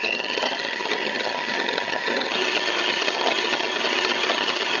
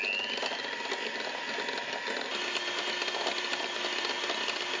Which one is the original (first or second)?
second